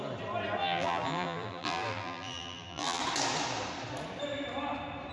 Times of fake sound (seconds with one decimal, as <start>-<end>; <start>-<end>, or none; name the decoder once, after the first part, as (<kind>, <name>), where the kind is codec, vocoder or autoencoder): 0.6-3.0 (vocoder, BigVGAN v2)